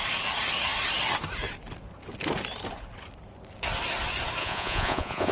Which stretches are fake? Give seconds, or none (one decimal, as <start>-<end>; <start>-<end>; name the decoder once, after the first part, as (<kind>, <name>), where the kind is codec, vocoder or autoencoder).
4.4-5.3 (vocoder, Vocos)